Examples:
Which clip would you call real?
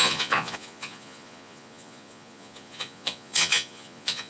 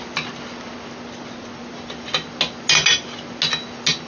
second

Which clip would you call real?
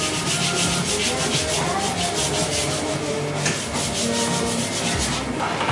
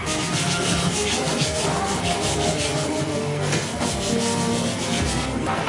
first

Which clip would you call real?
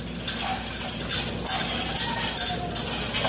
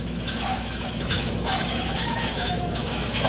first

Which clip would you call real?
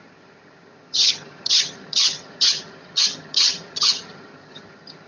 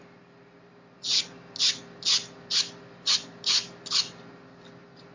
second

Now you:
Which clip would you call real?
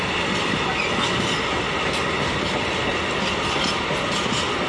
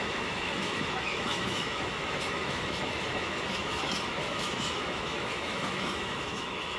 first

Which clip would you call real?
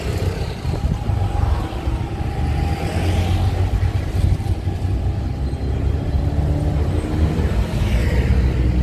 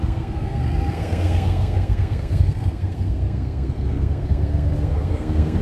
first